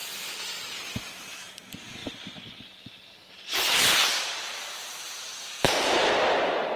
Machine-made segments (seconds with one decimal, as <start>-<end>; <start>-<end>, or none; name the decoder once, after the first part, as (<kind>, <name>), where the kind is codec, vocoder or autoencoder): 2.0-6.1 (vocoder, BigVGAN v2)